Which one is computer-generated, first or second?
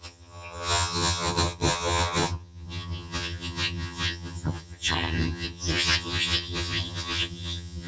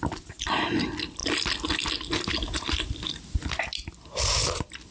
first